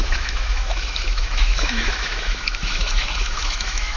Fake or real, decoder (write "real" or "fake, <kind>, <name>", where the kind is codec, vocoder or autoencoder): fake, autoencoder, DAC-VAE